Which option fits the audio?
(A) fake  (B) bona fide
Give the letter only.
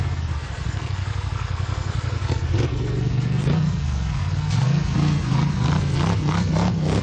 A